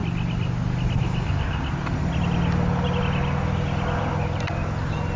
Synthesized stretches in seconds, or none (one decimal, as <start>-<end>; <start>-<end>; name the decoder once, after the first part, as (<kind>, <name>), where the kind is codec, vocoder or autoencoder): none